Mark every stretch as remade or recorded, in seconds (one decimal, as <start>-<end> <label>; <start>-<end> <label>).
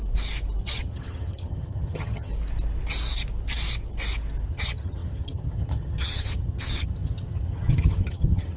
0.0-0.6 recorded; 0.6-2.3 remade; 2.3-4.5 recorded; 4.5-8.6 remade